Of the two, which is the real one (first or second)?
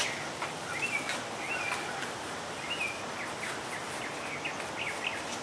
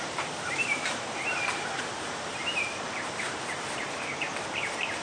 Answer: first